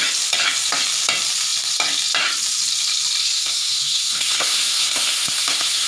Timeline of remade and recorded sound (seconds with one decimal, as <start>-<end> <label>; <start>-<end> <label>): 0.0-3.2 recorded; 3.2-5.9 remade